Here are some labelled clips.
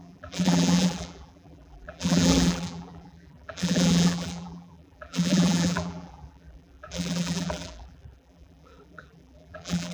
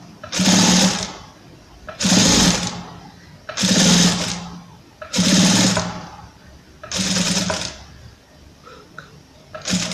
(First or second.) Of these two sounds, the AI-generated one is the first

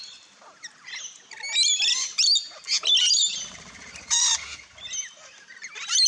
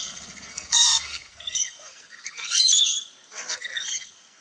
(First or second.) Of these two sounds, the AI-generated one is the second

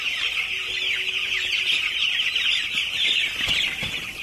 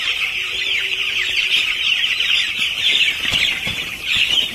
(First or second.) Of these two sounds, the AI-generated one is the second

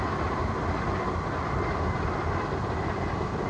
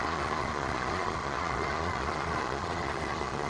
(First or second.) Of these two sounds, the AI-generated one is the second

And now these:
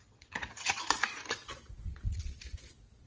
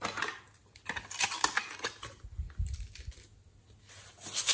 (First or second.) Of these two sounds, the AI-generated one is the first